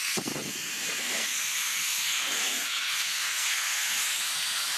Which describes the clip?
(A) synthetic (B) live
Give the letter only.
A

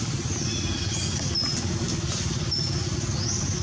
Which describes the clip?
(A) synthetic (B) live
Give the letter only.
B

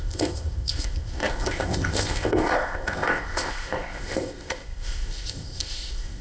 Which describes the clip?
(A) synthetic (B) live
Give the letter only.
A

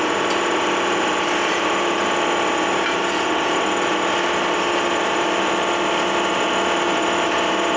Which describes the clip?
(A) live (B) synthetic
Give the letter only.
A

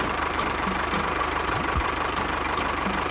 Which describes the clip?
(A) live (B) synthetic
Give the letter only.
B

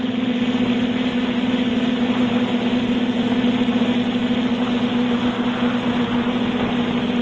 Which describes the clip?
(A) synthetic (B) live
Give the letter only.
B